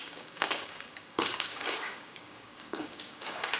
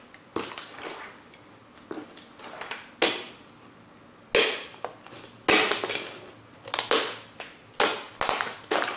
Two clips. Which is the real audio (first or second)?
second